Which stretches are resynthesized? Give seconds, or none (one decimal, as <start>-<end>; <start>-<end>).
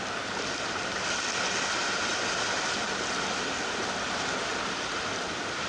none